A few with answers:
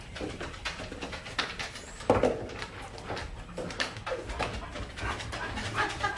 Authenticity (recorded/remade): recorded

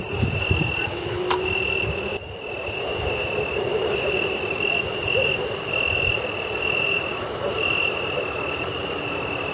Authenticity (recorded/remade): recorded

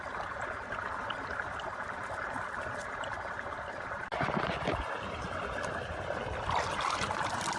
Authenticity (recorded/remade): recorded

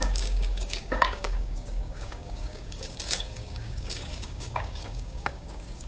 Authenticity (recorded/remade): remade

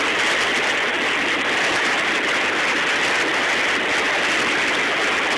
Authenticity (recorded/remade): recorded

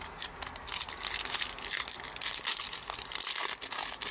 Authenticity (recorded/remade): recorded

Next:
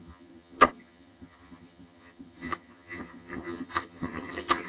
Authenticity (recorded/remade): remade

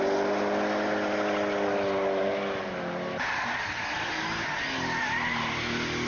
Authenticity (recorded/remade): recorded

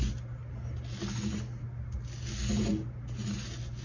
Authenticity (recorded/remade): recorded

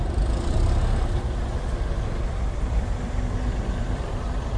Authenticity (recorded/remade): remade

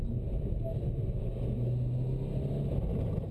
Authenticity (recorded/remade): recorded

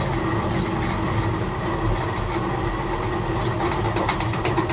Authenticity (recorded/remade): recorded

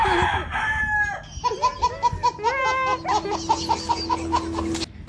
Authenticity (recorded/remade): recorded